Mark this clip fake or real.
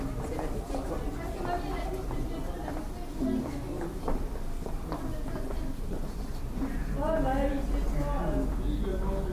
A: real